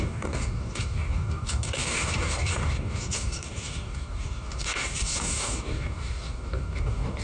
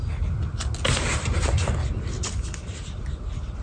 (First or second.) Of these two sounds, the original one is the second